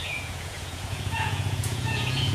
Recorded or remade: remade